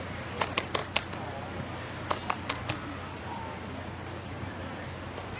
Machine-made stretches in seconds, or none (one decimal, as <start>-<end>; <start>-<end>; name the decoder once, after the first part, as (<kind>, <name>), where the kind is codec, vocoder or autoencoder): none